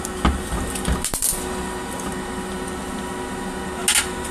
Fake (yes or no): no